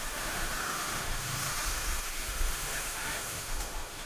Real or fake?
fake